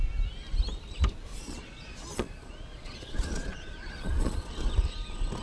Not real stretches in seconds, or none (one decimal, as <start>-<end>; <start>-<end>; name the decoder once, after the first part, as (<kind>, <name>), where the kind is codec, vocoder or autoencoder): 1.3-4.5 (vocoder, Vocos)